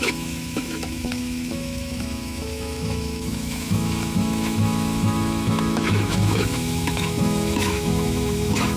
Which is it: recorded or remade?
remade